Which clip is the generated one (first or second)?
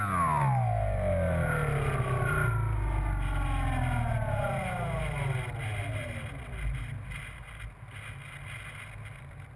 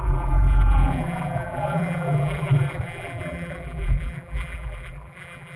second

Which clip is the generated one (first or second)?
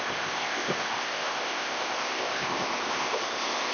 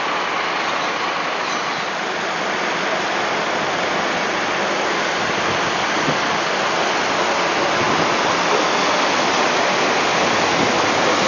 first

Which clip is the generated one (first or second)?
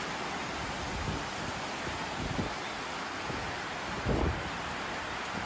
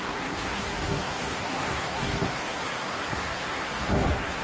second